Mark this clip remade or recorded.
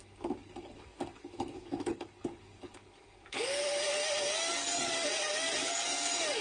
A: remade